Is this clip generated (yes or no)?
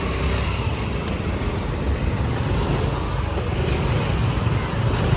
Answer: yes